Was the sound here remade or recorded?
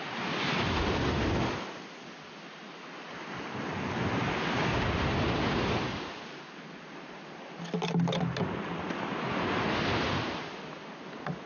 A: recorded